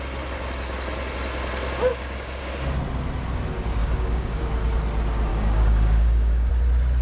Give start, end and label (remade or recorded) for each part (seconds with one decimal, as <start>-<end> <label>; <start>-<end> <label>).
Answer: 0.0-1.9 recorded; 1.9-2.5 remade; 2.5-3.8 recorded; 3.8-4.4 remade; 4.4-5.3 recorded; 5.3-6.5 remade; 6.5-7.0 recorded